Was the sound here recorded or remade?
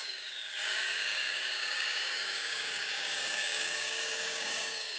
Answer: remade